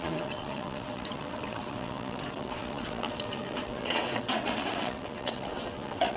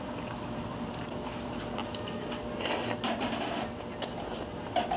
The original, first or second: second